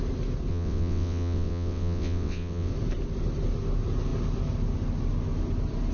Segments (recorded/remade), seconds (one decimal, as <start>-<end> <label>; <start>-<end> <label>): 0.0-0.5 recorded; 0.5-2.7 remade; 2.7-5.9 recorded